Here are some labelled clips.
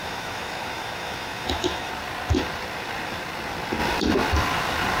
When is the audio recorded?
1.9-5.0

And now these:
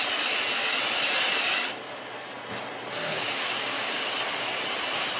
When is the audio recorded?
0.0-3.0; 4.0-5.2

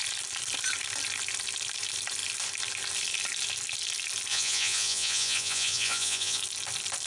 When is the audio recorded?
0.0-4.3; 6.4-7.1